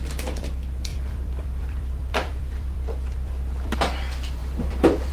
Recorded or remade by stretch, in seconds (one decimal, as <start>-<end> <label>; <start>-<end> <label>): 0.0-0.9 recorded; 0.9-3.8 remade; 3.8-4.4 recorded; 4.4-5.1 remade